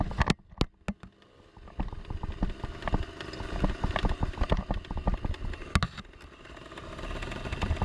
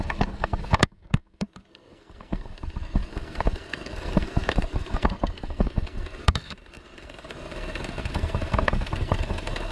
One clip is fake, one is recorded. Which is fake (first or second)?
second